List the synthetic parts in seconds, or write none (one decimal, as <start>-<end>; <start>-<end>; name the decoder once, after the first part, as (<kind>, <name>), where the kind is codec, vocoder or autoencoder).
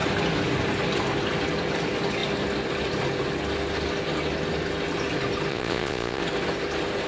5.5-6.2 (vocoder, Vocos)